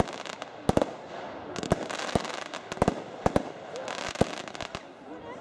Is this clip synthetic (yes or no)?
no